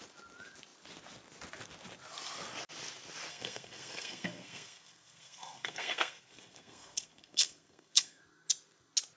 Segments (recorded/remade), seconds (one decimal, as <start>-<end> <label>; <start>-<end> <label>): 0.0-3.3 recorded; 3.3-8.2 remade; 8.2-9.2 recorded